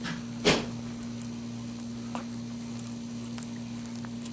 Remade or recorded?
recorded